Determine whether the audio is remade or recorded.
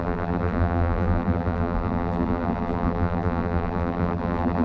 remade